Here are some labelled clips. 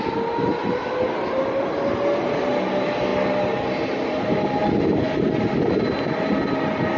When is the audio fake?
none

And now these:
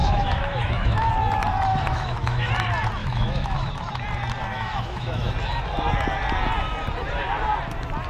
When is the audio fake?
0.0-1.1 (autoencoder, DAC-VAE); 1.7-2.5; 3.0-3.7; 4.5-5.3